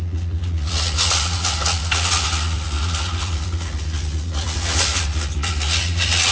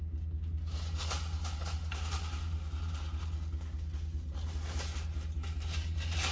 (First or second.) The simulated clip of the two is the first